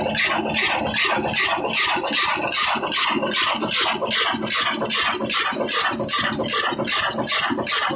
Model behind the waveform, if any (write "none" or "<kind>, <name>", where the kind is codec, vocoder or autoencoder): none